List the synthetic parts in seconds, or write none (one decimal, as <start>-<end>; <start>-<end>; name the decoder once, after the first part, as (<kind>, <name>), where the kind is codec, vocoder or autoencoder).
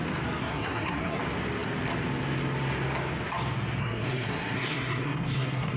0.4-1.2 (codec, SNAC); 3.8-5.8